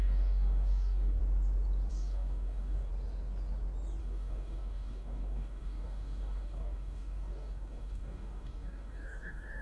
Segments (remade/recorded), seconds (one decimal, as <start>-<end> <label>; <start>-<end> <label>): 0.0-1.2 remade; 1.2-1.9 recorded; 1.9-2.9 remade; 2.9-4.0 recorded; 4.0-9.6 remade